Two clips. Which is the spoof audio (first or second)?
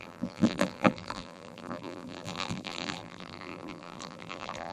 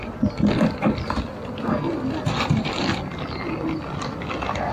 first